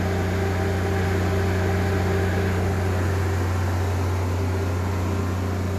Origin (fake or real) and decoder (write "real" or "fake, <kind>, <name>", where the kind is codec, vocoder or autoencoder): real